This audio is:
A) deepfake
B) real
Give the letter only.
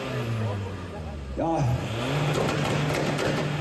B